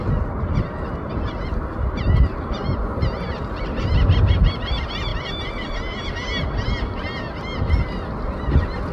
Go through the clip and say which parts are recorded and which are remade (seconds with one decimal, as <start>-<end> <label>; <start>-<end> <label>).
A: 0.0-8.9 recorded